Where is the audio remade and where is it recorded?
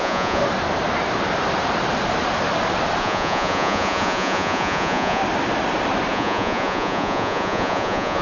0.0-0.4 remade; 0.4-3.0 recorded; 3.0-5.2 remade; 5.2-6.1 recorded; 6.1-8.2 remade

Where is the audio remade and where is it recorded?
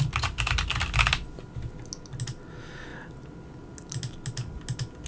0.0-5.1 recorded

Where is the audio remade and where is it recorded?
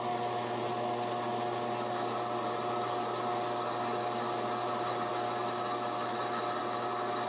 0.0-7.3 recorded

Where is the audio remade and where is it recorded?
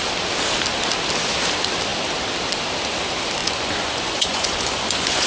0.0-3.4 recorded; 3.4-5.3 remade